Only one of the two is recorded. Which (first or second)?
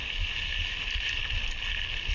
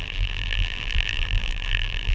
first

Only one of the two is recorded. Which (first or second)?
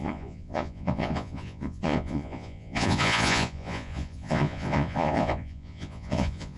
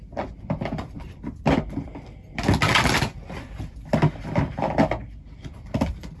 second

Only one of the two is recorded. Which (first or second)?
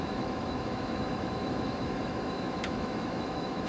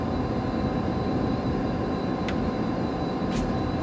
second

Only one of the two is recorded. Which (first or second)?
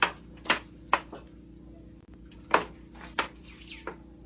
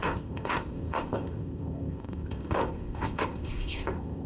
first